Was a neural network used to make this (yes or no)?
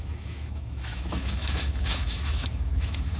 yes